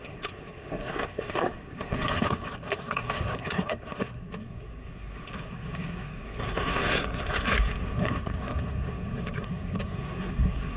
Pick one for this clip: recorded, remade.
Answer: remade